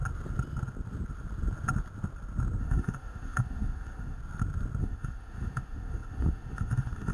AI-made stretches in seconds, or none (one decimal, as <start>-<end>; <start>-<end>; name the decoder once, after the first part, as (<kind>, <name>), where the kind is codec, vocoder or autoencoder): 2.6-4.2 (autoencoder, DAC-VAE); 4.8-7.1